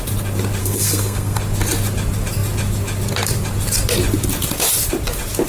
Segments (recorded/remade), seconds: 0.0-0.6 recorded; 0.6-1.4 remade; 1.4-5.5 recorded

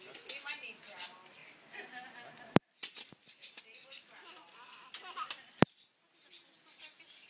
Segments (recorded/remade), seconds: 0.0-7.3 recorded

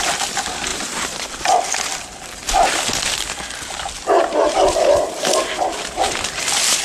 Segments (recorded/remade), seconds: 0.0-0.7 remade; 0.7-1.7 recorded; 1.7-2.4 remade; 2.4-4.7 recorded; 4.7-6.8 remade

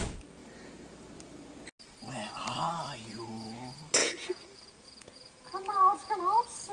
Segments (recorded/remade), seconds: 0.0-4.0 recorded; 4.0-6.2 remade; 6.2-6.7 recorded

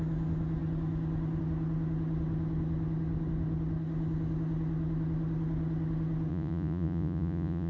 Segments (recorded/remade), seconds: 0.0-6.3 recorded; 6.3-7.7 remade

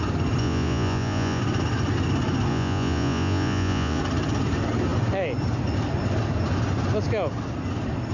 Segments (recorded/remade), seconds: 0.0-0.4 recorded; 0.4-1.4 remade; 1.4-2.5 recorded; 2.5-4.0 remade; 4.0-8.1 recorded